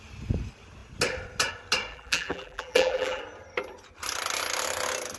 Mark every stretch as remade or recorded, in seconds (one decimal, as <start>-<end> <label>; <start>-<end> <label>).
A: 0.0-1.9 recorded; 1.9-3.2 remade; 3.2-5.2 recorded